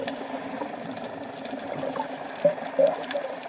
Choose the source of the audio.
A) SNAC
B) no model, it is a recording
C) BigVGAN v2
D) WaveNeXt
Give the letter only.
B